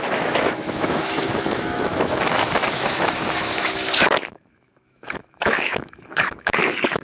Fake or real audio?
fake